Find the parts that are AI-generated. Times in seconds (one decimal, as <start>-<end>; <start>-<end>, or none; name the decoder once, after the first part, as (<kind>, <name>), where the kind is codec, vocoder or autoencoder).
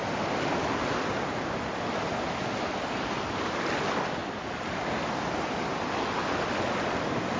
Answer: none